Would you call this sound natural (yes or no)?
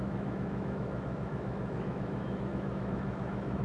no